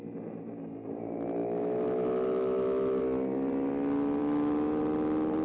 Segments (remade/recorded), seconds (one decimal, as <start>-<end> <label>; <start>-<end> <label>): 0.0-1.4 recorded; 1.4-3.0 remade; 3.0-4.2 recorded; 4.2-4.8 remade; 4.8-5.4 recorded